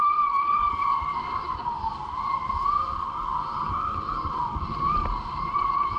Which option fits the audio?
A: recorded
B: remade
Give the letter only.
A